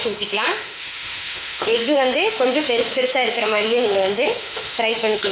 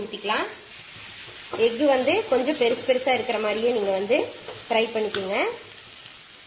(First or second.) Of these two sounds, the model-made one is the first